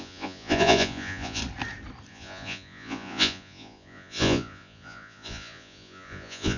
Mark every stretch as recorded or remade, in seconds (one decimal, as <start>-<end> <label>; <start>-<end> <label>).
0.0-1.4 remade; 1.4-2.1 recorded; 2.1-6.6 remade